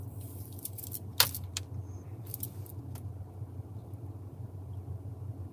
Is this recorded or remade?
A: recorded